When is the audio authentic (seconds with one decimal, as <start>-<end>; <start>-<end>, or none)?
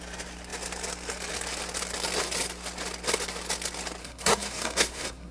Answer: 0.0-4.0